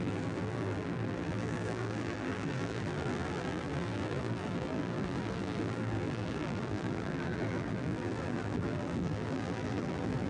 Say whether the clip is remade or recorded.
remade